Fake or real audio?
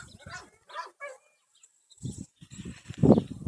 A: real